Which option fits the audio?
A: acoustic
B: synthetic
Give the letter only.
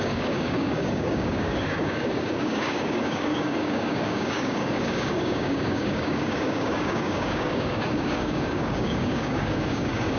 B